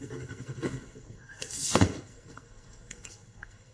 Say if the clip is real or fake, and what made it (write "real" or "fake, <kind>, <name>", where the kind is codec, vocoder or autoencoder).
fake, codec, SNAC